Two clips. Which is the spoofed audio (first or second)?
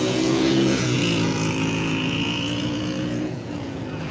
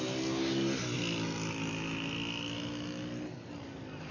first